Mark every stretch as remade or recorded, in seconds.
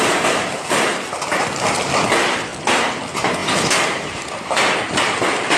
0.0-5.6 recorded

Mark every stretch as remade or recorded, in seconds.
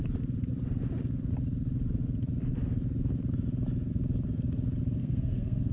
0.0-5.0 recorded; 5.0-5.7 remade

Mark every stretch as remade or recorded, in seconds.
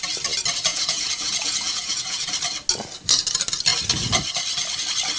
0.0-0.7 recorded; 0.7-2.3 remade; 2.3-5.2 recorded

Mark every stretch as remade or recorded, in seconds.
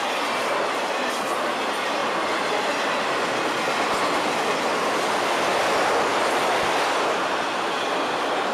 0.0-8.5 recorded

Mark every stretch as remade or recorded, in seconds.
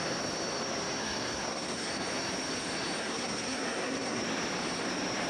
0.0-1.0 recorded; 1.0-1.9 remade; 1.9-3.0 recorded; 3.0-4.2 remade; 4.2-5.3 recorded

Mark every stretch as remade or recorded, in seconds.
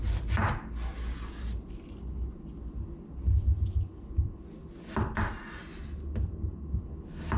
0.0-7.4 recorded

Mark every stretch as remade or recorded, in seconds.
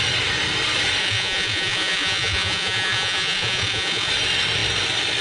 0.0-1.0 recorded; 1.0-4.1 remade; 4.1-5.2 recorded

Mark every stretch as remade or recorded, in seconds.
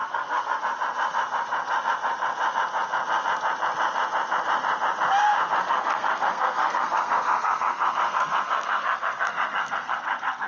0.0-0.6 remade; 0.6-5.7 recorded; 5.7-10.5 remade